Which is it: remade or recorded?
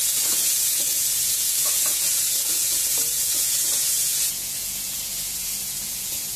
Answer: remade